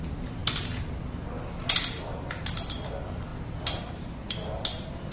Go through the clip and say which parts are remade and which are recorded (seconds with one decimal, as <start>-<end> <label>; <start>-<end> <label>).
0.0-5.1 recorded